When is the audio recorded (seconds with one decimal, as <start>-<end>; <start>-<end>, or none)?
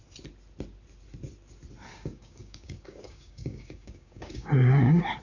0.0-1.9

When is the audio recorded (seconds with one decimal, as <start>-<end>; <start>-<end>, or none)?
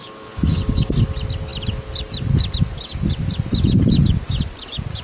1.0-5.0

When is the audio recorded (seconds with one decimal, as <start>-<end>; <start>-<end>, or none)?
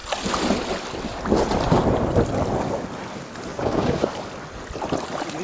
0.0-3.5; 4.1-5.4